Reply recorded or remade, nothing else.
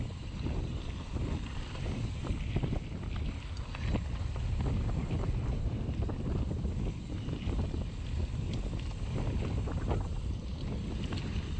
recorded